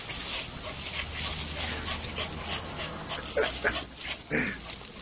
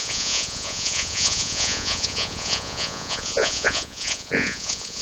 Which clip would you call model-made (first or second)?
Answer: second